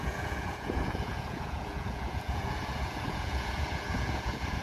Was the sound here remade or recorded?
remade